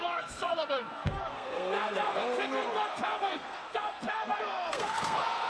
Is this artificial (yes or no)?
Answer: yes